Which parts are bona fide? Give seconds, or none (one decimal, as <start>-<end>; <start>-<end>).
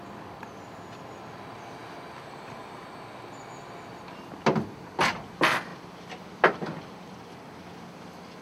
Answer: 0.0-8.4